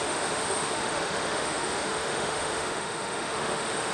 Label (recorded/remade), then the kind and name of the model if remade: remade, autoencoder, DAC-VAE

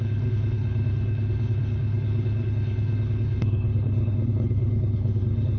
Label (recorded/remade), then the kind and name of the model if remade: remade, codec, HILCodec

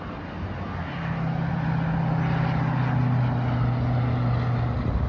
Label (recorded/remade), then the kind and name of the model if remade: recorded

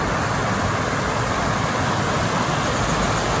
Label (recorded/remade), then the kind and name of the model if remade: recorded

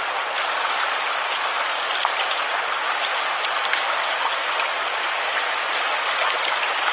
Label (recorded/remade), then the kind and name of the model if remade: recorded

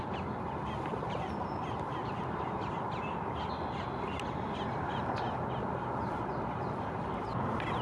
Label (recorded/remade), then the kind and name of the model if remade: recorded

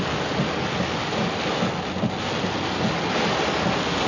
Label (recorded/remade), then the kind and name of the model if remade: recorded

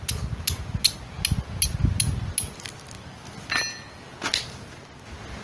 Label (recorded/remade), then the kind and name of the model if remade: recorded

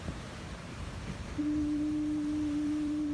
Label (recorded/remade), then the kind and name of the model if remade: remade, vocoder, BigVGAN v2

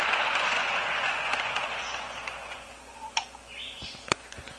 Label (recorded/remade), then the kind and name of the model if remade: remade, vocoder, Vocos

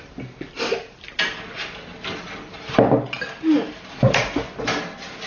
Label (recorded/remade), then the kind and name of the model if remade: recorded